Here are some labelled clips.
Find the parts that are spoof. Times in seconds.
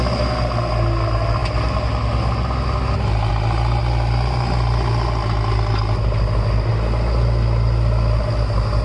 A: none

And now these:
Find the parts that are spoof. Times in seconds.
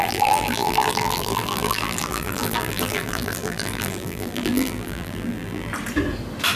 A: 0.0-5.7 (vocoder, BigVGAN v2)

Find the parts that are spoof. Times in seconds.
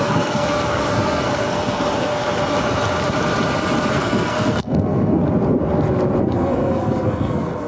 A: 0.0-2.1 (codec, SNAC); 3.9-5.2; 6.2-7.7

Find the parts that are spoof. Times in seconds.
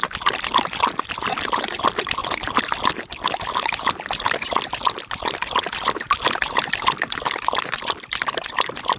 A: none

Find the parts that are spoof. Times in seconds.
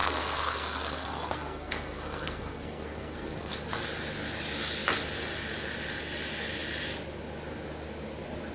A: 0.0-3.6 (codec, SNAC)